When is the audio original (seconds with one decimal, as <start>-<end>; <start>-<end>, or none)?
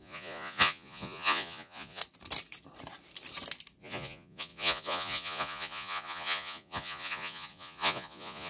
2.0-3.8